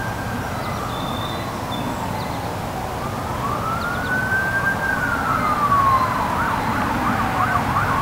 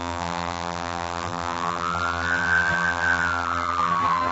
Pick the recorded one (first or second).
first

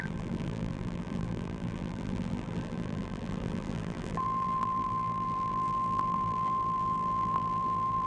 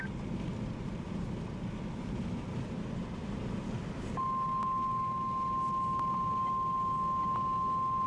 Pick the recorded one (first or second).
second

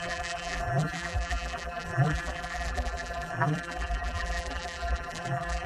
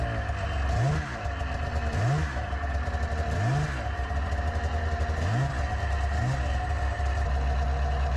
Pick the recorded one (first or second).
second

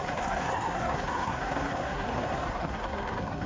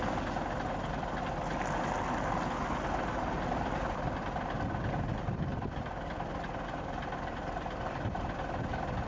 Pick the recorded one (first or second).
second